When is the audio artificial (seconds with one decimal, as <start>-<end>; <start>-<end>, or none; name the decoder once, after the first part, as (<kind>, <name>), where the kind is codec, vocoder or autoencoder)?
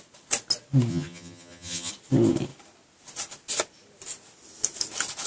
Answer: 0.9-1.9 (vocoder, HiFi-GAN)